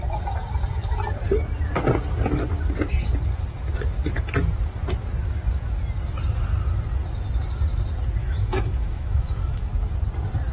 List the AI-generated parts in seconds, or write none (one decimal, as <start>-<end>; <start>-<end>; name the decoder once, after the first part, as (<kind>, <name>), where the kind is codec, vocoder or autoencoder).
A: 8.2-9.7 (autoencoder, DAC-VAE)